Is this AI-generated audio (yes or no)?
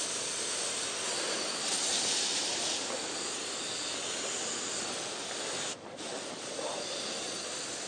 no